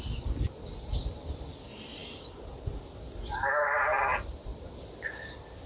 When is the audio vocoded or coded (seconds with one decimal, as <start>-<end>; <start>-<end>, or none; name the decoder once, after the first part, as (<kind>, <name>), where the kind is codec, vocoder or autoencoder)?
none